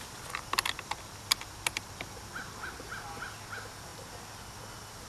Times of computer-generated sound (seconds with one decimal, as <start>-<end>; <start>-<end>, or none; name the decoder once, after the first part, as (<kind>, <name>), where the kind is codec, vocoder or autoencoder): none